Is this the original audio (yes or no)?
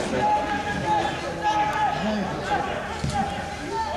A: yes